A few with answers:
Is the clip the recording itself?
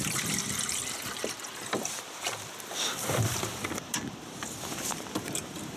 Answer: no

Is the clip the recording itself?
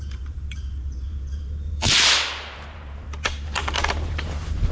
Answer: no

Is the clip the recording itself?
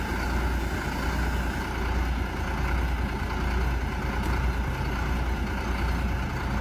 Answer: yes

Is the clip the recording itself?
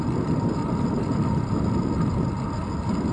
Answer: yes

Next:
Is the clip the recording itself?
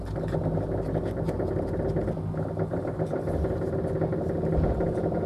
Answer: yes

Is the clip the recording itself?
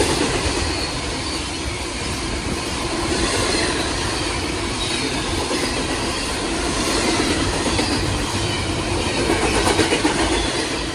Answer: no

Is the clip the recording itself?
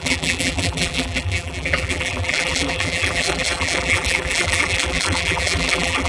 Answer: no